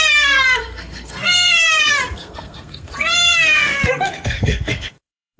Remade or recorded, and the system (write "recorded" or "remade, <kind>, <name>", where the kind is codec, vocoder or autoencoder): remade, codec, SNAC